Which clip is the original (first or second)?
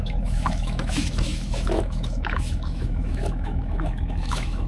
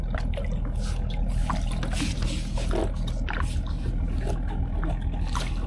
second